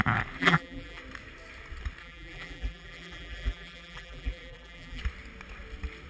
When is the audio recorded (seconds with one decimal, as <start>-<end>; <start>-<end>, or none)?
0.0-0.4; 1.0-2.0; 5.0-6.1